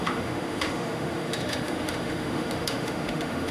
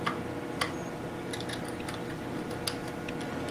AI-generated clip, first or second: first